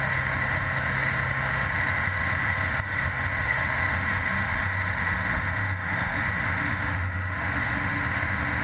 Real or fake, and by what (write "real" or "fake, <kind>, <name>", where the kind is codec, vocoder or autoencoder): fake, autoencoder, DAC-VAE